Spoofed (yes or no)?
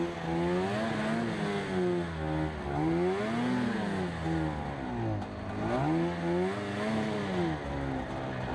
no